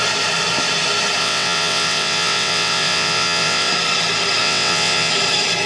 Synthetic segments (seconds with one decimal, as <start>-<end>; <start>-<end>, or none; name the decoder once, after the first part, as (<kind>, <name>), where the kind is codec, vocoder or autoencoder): 1.2-3.7 (vocoder, WaveNeXt); 4.4-5.1